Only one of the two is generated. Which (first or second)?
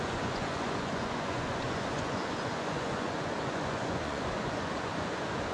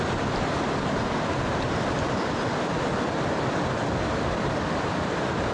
first